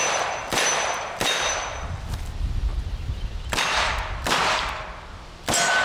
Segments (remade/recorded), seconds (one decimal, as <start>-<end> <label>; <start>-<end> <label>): 0.0-2.7 remade; 2.7-3.4 recorded; 3.4-5.8 remade